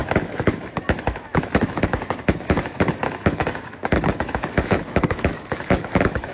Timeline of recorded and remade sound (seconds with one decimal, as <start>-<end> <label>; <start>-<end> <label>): 0.0-6.3 remade